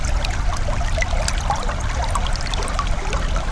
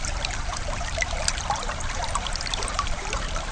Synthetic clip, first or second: second